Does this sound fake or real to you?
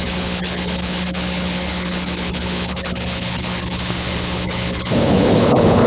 fake